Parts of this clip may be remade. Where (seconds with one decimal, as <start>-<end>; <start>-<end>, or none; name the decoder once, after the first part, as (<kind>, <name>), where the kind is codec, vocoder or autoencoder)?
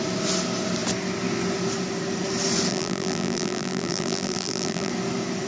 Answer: 2.7-4.9 (vocoder, BigVGAN v2)